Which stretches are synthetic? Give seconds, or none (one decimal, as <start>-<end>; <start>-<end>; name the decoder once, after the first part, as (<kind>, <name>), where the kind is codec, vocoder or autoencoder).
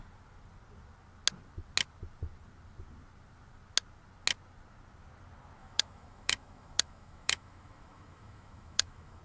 5.6-9.2 (autoencoder, DAC-VAE)